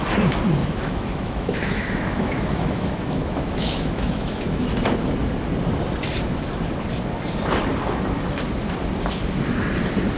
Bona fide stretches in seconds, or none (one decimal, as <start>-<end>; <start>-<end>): 0.0-0.6; 4.7-10.2